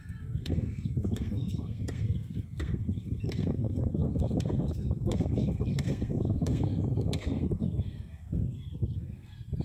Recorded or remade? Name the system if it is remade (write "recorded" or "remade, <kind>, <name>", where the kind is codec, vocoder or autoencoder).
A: remade, codec, SNAC